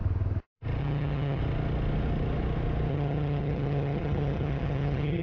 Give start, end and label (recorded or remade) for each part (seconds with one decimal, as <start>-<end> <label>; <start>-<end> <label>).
0.0-0.8 recorded; 0.8-1.4 remade; 1.4-2.9 recorded; 2.9-5.2 remade